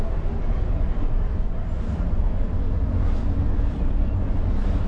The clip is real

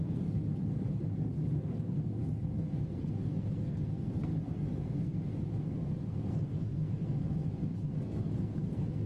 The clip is fake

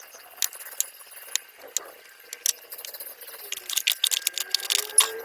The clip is real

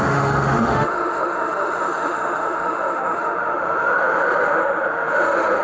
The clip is fake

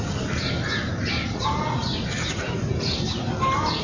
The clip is real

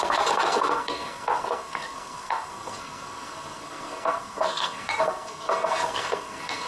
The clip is fake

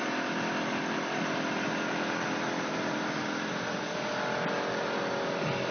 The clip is real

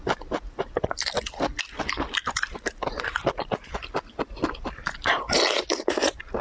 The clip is real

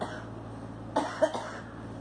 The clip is real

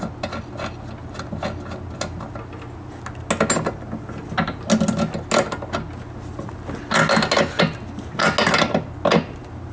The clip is real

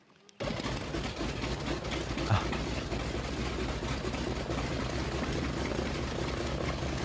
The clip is real